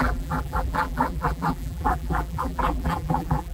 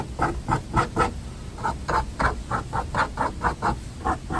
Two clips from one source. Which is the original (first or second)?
second